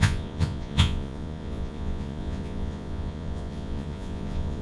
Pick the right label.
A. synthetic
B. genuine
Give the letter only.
A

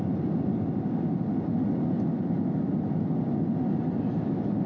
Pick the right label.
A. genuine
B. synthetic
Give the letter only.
A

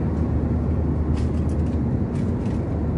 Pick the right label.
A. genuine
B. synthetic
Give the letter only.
A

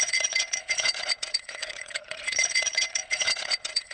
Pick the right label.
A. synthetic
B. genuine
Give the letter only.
A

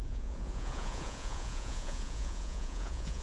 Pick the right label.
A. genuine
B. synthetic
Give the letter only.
B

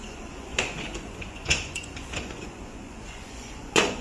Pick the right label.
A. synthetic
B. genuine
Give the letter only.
A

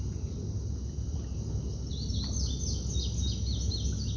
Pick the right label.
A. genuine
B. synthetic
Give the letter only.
A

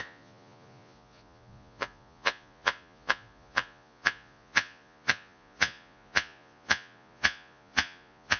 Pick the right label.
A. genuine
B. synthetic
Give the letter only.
B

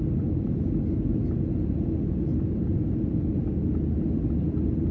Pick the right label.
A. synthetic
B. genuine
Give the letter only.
B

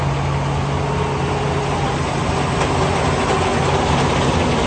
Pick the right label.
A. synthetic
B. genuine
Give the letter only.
B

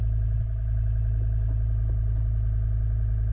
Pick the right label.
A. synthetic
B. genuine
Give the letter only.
B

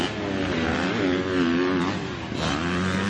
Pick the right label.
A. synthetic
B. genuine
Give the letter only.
B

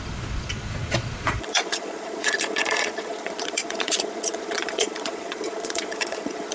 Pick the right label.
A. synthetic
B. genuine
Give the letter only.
A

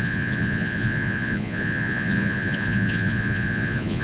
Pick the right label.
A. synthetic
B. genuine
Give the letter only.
A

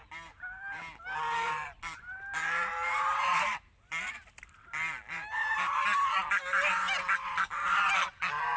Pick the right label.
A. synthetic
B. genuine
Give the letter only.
B